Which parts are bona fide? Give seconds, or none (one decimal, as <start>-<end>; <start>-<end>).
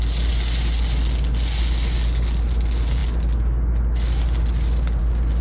0.0-5.4